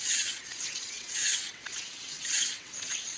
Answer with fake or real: fake